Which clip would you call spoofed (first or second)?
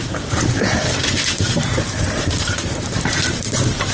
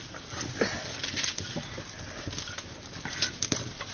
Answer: first